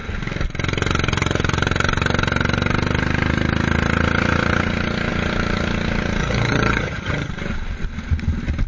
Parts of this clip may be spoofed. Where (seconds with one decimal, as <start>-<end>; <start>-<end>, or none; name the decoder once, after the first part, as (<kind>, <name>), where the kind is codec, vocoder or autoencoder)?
6.2-7.3 (vocoder, HiFi-GAN)